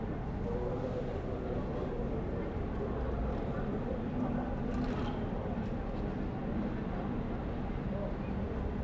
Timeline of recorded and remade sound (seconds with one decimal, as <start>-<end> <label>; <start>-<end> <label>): 0.0-8.8 recorded